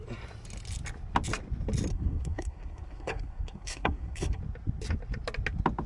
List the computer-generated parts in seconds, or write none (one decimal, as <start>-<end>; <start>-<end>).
1.9-4.4